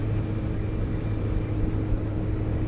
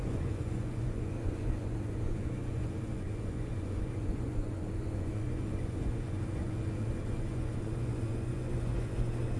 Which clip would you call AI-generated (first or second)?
second